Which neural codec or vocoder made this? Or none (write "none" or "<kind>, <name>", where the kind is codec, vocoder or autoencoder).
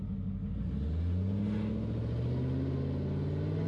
none